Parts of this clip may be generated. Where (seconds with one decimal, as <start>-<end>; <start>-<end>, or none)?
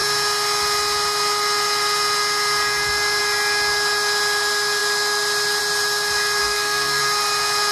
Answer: 6.4-7.0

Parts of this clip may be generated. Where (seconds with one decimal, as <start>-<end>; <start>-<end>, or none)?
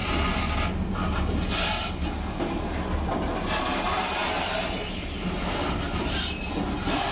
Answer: none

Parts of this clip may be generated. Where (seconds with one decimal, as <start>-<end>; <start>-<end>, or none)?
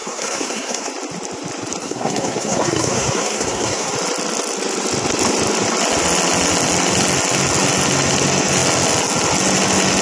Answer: 0.0-0.9; 1.8-3.9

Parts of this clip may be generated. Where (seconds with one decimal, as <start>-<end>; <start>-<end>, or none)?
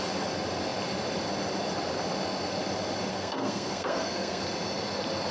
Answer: 3.1-4.4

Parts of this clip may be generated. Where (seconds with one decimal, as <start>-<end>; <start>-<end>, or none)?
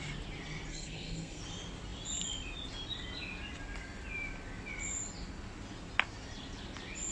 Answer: 0.7-1.4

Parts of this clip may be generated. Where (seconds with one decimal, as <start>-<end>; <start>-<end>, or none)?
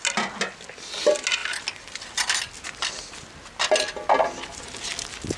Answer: none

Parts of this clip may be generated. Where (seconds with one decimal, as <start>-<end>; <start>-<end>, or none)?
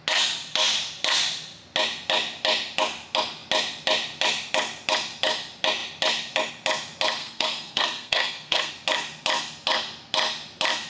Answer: 7.2-8.7